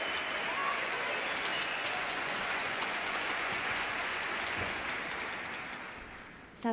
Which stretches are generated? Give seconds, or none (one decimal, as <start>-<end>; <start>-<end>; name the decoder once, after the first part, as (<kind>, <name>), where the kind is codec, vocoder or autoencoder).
0.6-1.1 (vocoder, Vocos); 1.5-4.8